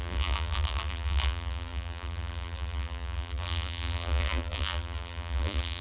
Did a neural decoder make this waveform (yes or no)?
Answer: yes